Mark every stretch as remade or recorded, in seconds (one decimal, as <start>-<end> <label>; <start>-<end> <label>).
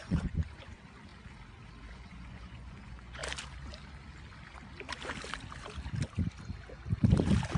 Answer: 0.0-1.1 remade; 1.1-1.9 recorded; 1.9-3.2 remade; 3.2-7.6 recorded